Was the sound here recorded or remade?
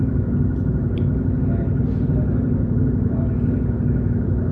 recorded